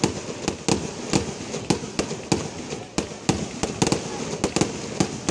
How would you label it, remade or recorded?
recorded